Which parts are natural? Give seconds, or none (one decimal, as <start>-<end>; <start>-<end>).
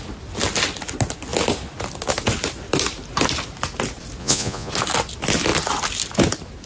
0.0-4.2; 4.7-6.7